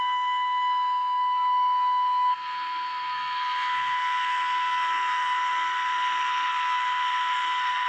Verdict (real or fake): fake